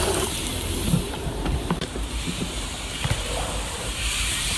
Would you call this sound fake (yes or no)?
yes